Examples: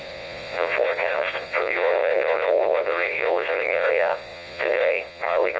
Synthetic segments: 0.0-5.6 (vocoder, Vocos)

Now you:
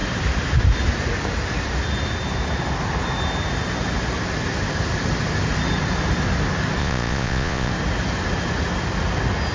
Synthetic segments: 6.8-7.7 (vocoder, Vocos)

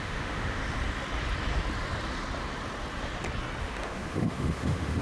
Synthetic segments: 0.0-0.6 (autoencoder, DAC-VAE); 3.6-5.0

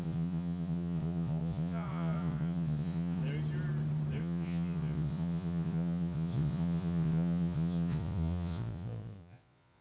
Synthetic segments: 0.0-3.2 (vocoder, Vocos); 4.2-9.8